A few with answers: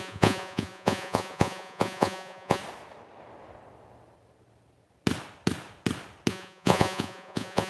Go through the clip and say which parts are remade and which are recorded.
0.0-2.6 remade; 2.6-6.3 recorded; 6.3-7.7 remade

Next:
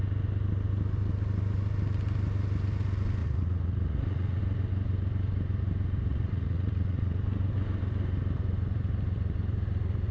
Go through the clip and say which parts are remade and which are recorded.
0.0-3.2 recorded; 3.2-4.4 remade; 4.4-6.1 recorded; 6.1-7.2 remade; 7.2-10.1 recorded